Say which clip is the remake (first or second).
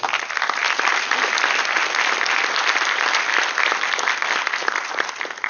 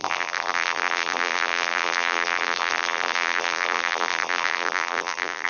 second